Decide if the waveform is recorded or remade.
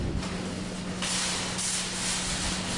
recorded